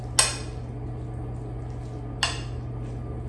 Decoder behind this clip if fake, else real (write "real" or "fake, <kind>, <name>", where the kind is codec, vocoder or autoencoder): real